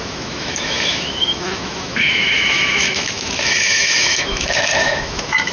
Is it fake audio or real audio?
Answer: fake